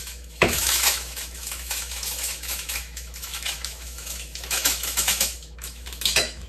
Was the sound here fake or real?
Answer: fake